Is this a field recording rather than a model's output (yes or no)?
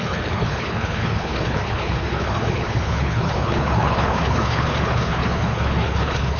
no